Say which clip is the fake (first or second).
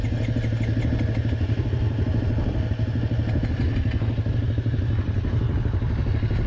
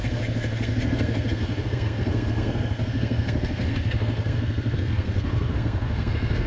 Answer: second